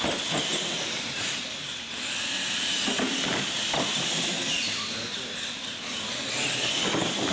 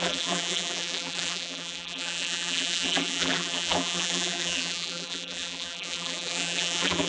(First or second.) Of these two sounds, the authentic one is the first